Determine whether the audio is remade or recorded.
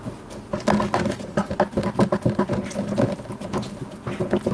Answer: recorded